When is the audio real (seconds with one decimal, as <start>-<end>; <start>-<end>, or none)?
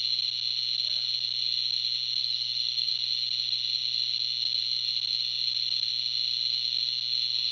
0.0-2.2; 2.9-7.5